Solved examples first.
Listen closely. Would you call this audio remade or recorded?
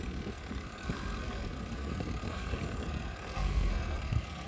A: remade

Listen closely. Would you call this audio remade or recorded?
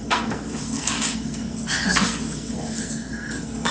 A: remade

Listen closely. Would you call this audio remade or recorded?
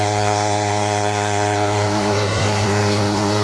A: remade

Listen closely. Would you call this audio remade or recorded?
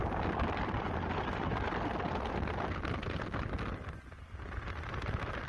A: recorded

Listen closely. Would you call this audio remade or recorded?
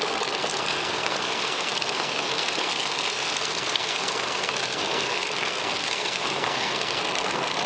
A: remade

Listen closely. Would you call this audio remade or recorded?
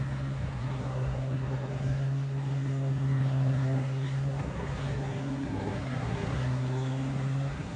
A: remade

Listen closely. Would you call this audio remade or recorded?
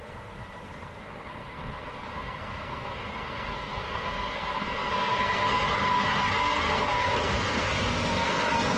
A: remade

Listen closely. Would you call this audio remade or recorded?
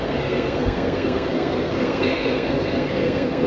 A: remade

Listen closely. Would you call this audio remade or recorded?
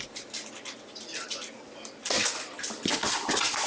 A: recorded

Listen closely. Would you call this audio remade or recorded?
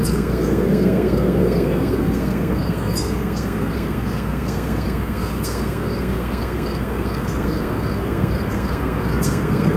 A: remade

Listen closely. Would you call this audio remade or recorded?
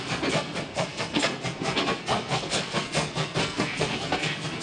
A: remade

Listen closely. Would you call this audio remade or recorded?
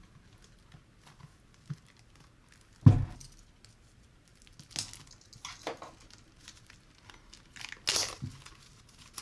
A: recorded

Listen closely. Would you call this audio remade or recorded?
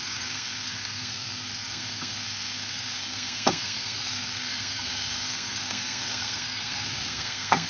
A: remade